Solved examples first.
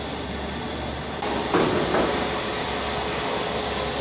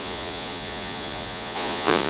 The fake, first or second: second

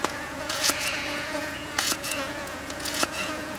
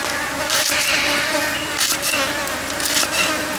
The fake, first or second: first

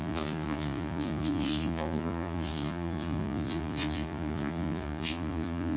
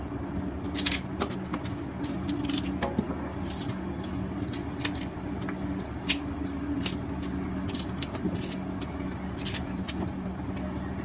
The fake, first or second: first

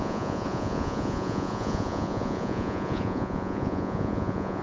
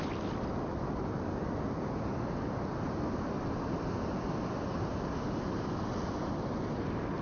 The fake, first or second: first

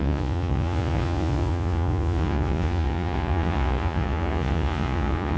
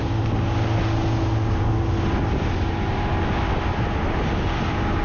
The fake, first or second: first